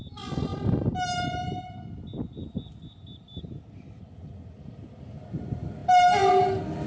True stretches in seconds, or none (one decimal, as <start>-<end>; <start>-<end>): 0.0-6.9